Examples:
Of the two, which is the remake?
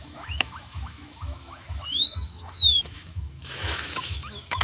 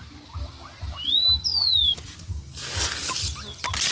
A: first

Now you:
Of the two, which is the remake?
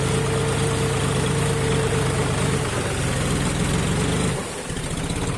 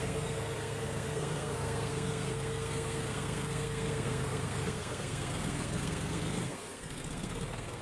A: second